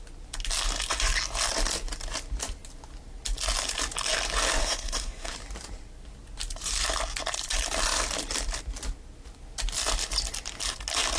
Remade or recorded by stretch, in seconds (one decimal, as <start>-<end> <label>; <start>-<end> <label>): 0.0-4.6 recorded; 4.6-5.3 remade; 5.3-11.2 recorded

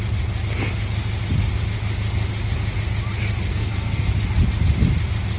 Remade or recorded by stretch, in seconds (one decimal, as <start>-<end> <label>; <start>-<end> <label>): 0.0-3.5 recorded; 3.5-4.1 remade; 4.1-5.4 recorded

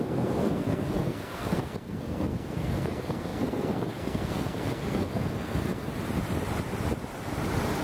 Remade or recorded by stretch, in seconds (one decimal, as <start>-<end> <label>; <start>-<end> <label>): 0.0-5.9 remade; 5.9-7.8 recorded

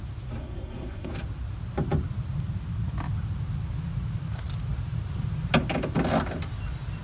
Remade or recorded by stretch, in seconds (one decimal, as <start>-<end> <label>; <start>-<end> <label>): 0.0-0.4 recorded; 0.4-1.1 remade; 1.1-7.0 recorded

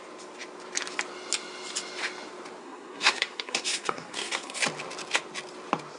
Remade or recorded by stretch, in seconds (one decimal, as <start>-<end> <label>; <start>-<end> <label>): 0.0-2.6 recorded; 2.6-4.6 remade; 4.6-6.0 recorded

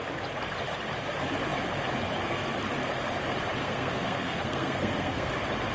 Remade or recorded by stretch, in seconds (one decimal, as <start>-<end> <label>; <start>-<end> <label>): 0.0-3.6 recorded; 3.6-5.3 remade; 5.3-5.7 recorded

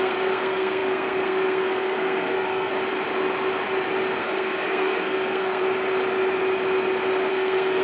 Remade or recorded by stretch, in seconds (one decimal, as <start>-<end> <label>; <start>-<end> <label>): 0.0-2.7 remade; 2.7-4.2 recorded; 4.2-5.6 remade; 5.6-7.3 recorded; 7.3-7.8 remade

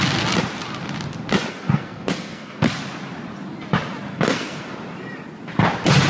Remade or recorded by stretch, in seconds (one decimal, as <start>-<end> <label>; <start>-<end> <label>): 0.0-1.5 recorded; 1.5-2.7 remade; 2.7-4.1 recorded; 4.1-4.7 remade; 4.7-6.1 recorded